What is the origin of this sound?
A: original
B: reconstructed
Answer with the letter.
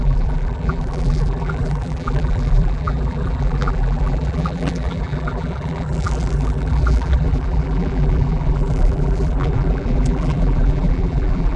B